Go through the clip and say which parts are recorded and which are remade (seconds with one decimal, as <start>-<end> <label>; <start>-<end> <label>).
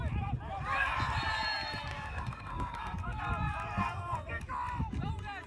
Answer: 0.0-1.9 recorded; 1.9-3.2 remade; 3.2-3.8 recorded; 3.8-4.4 remade; 4.4-5.5 recorded